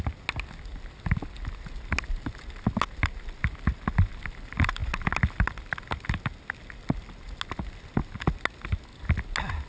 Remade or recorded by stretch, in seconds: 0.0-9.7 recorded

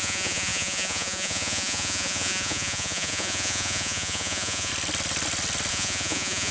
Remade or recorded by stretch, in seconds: 0.0-4.7 remade; 4.7-5.7 recorded; 5.7-6.5 remade